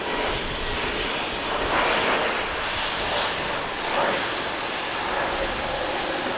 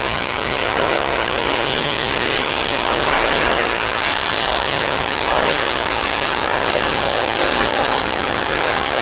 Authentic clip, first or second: first